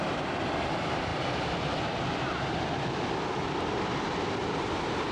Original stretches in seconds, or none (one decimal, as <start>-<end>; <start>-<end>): 0.0-5.1